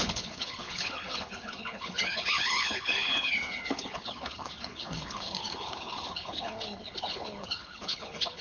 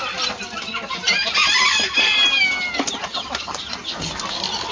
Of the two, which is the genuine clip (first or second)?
second